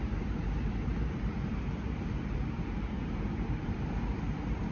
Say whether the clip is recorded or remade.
remade